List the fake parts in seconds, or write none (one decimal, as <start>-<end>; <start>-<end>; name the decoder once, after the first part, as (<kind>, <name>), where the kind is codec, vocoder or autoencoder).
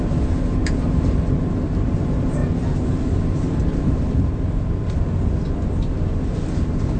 0.0-2.4 (vocoder, BigVGAN v2); 6.1-7.0